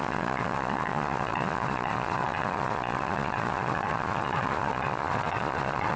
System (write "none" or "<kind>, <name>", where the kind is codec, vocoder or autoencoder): vocoder, Vocos